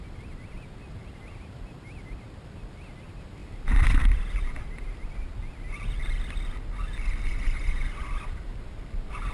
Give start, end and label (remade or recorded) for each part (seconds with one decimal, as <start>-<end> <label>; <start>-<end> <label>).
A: 0.0-5.4 remade; 5.4-7.3 recorded; 7.3-9.3 remade

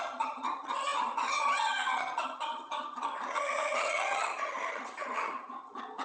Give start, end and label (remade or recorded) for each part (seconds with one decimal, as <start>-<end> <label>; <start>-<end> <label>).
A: 0.0-6.0 remade

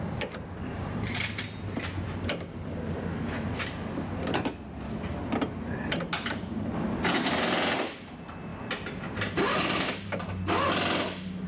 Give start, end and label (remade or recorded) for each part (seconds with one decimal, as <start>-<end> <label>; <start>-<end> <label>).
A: 0.0-0.7 recorded; 0.7-1.2 remade; 1.2-8.5 recorded; 8.5-9.9 remade; 9.9-11.5 recorded

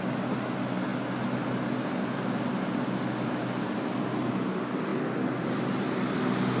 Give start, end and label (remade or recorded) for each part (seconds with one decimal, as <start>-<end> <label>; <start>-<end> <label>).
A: 0.0-6.6 recorded

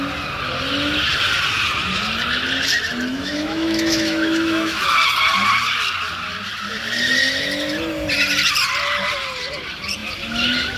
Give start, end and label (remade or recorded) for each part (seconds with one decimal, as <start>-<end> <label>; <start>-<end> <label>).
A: 0.0-3.1 recorded; 3.1-4.8 remade; 4.8-10.8 recorded

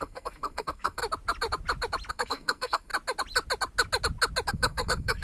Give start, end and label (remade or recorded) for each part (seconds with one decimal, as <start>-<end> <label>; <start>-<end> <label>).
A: 0.0-1.0 remade; 1.0-2.1 recorded; 2.1-2.9 remade; 2.9-4.5 recorded; 4.5-5.2 remade